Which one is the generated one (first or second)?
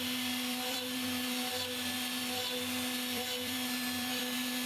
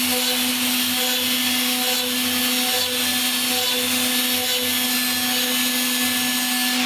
first